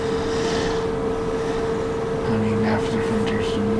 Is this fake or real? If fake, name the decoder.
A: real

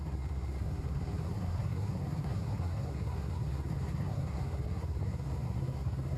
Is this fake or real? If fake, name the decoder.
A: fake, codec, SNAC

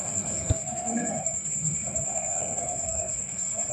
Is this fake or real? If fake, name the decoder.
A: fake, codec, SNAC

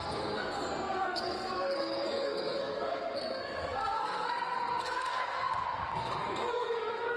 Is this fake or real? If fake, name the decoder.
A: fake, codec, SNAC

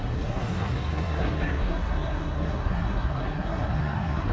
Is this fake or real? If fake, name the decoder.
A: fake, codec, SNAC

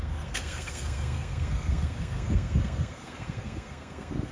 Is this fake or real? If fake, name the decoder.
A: fake, codec, SNAC